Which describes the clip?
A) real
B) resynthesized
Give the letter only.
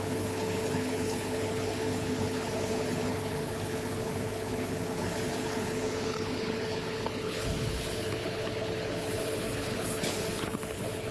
B